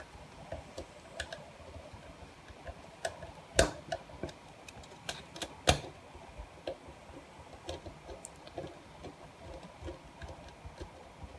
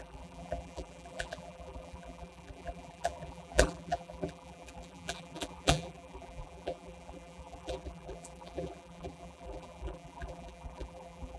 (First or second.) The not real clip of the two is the second